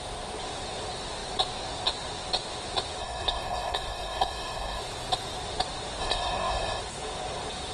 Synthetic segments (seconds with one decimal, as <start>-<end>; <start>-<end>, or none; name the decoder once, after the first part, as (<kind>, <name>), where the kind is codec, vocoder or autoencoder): 3.0-4.8 (codec, SNAC); 6.0-6.8